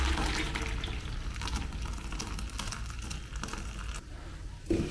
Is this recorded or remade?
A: recorded